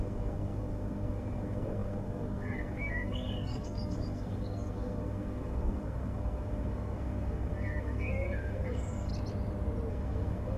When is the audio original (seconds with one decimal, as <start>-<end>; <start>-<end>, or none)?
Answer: 9.1-9.9